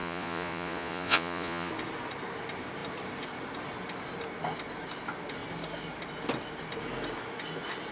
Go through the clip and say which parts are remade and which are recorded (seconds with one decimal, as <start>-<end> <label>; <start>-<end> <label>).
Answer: 0.0-1.7 remade; 1.7-7.9 recorded